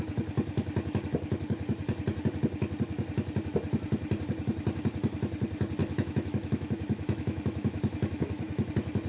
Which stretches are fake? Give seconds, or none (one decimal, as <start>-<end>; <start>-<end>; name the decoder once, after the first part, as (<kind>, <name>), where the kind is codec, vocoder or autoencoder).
5.8-8.7 (autoencoder, DAC-VAE)